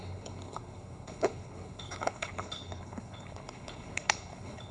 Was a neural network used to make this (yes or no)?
yes